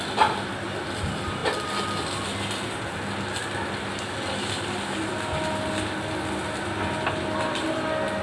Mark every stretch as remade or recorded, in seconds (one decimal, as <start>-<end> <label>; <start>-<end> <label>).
0.0-8.2 recorded